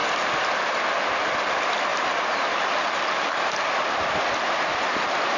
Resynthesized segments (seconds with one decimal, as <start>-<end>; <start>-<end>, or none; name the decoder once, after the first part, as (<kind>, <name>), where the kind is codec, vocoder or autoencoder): none